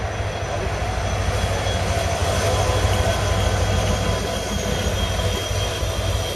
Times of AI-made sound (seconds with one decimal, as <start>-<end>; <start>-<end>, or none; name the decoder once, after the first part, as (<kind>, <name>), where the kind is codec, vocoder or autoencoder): none